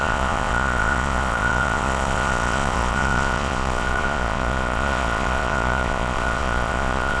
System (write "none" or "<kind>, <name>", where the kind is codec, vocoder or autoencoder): vocoder, Vocos